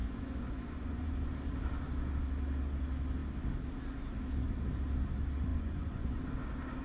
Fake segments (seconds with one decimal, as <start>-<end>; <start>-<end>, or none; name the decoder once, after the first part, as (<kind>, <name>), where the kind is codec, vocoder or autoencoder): 0.0-1.3 (vocoder, Vocos); 5.5-6.2